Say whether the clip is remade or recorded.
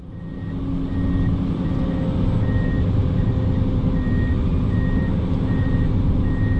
recorded